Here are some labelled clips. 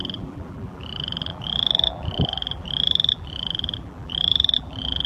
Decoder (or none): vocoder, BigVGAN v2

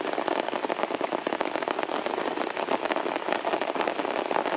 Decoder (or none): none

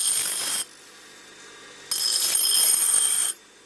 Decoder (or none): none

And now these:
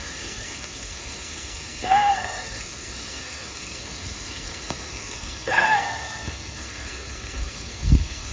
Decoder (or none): codec, SNAC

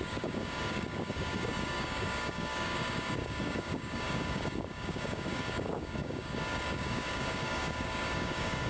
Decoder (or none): codec, DAC